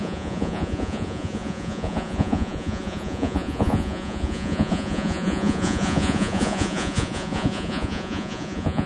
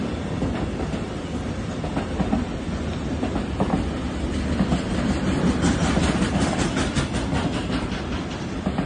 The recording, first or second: second